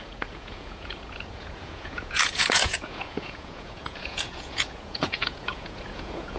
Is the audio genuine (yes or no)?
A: no